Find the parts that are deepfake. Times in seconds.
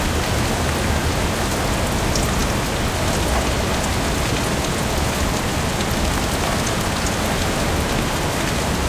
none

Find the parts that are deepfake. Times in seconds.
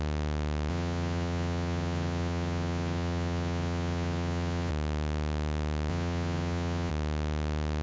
0.7-4.7; 5.9-6.9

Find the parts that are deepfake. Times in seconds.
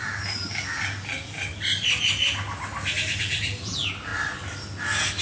0.0-1.5; 3.2-4.1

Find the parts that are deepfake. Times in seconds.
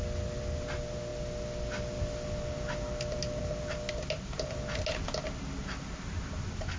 none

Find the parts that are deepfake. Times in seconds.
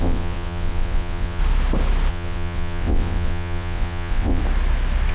0.0-1.4; 2.1-4.4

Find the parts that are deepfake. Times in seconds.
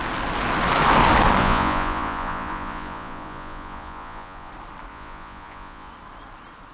1.4-4.5; 4.9-5.9